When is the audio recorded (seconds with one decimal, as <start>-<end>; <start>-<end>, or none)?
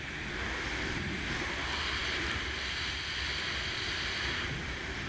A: 0.0-5.1